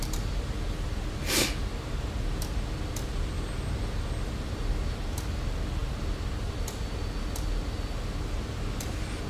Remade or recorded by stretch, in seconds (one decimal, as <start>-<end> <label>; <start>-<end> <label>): 0.0-9.3 recorded